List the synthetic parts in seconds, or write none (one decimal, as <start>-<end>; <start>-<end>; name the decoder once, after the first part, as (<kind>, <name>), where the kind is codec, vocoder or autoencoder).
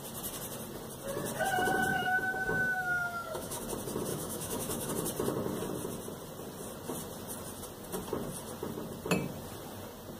1.9-3.6 (autoencoder, DAC-VAE); 4.1-4.9